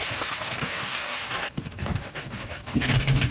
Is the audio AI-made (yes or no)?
yes